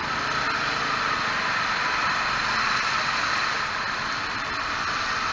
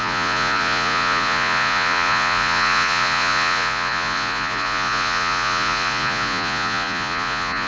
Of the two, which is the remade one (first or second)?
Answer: second